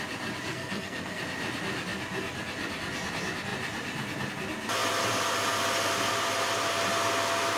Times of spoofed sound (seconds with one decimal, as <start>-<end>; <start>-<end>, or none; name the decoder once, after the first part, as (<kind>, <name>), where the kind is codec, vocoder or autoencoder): 0.5-1.2 (codec, SNAC)